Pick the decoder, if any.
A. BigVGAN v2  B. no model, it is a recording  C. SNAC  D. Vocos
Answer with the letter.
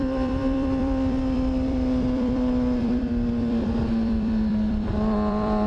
A